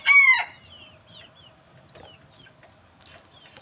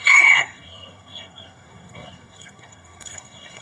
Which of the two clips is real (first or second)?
first